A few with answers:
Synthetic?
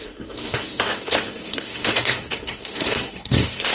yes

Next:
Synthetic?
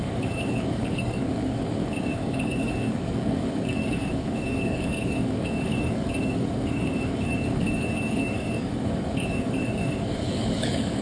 yes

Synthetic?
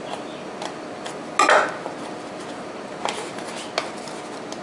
no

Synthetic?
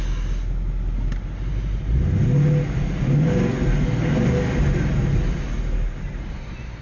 no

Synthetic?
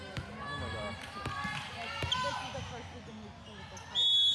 no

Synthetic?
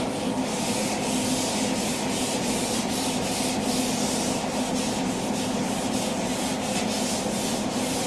no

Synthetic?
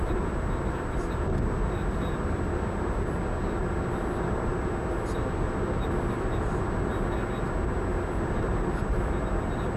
no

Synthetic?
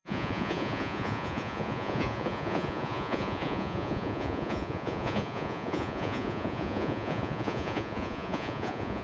yes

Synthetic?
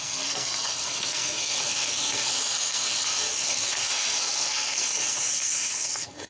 yes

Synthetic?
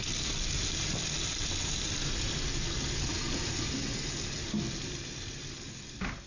no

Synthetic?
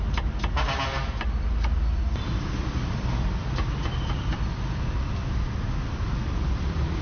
no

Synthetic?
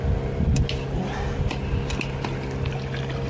no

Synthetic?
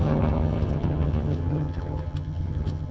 yes